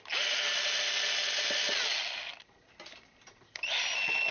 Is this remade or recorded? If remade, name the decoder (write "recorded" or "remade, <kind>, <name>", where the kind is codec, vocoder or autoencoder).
recorded